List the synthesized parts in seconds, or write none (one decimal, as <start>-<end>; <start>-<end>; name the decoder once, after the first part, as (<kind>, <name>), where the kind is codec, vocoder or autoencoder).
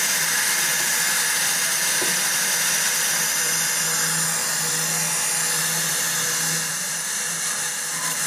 0.7-1.9 (vocoder, BigVGAN v2); 6.7-7.7